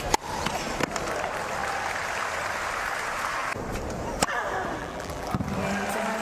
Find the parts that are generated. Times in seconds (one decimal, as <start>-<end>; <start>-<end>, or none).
4.8-5.3